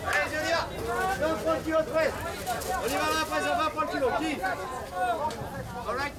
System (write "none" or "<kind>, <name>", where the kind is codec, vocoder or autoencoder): none